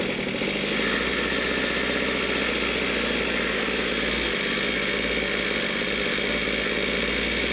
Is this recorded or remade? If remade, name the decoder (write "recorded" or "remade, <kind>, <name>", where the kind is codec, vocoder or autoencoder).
recorded